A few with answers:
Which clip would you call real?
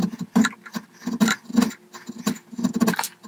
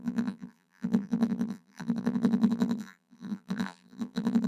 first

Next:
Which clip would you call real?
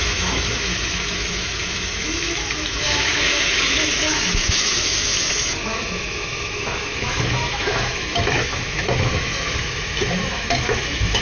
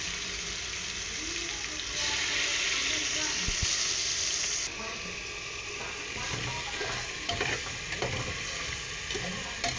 second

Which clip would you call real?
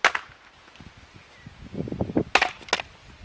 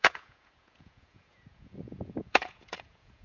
first